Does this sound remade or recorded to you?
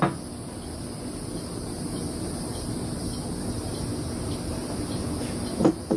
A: recorded